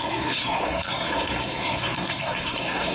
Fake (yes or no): yes